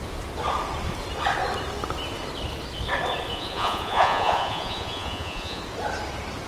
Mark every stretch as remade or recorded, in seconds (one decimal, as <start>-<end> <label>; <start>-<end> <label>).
0.0-3.3 recorded; 3.3-5.6 remade; 5.6-6.5 recorded